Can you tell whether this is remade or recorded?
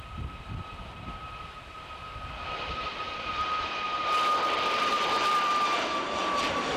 remade